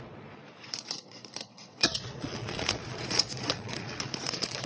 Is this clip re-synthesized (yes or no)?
yes